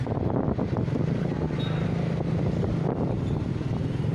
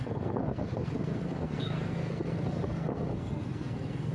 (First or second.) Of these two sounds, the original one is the first